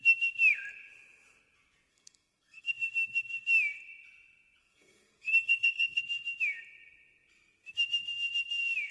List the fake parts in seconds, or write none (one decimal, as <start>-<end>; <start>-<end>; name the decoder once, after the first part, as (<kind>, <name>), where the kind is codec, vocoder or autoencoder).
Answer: 1.9-2.7 (codec, SNAC); 4.6-6.0